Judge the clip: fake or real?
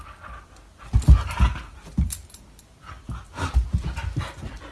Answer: real